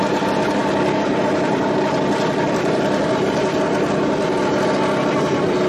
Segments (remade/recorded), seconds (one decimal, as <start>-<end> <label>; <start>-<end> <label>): 0.0-5.7 recorded